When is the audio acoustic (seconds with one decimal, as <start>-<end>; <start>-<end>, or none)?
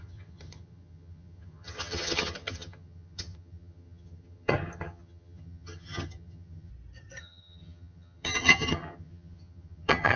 6.7-7.2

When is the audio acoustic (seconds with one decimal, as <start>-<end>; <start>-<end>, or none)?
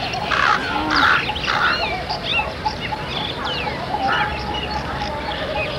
none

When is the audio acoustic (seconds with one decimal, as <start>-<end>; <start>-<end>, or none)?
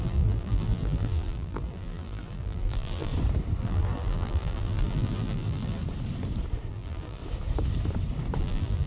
3.1-3.6; 5.8-6.7; 7.2-8.4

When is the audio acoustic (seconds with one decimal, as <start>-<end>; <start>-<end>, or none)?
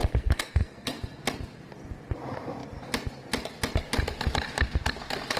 1.0-5.4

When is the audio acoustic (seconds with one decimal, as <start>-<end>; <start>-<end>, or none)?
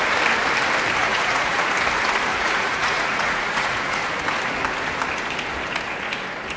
0.0-1.0; 1.7-2.3; 4.0-6.6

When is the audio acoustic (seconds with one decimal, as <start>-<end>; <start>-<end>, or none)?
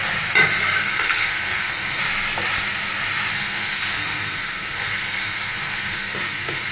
0.0-0.8; 2.0-3.3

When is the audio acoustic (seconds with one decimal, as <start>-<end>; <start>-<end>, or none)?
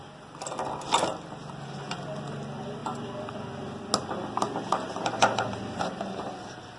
0.0-6.8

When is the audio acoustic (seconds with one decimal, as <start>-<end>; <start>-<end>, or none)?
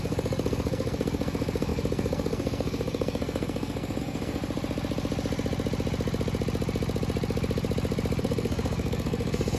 4.4-8.2